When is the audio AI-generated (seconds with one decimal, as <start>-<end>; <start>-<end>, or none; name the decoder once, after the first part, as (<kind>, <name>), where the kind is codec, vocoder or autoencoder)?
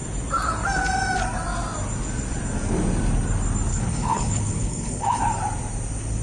3.7-5.2 (codec, HILCodec)